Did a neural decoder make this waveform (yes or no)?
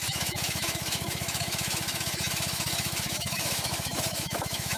yes